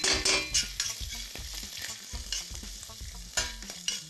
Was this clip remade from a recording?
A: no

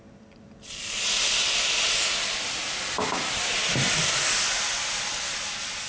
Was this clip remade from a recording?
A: no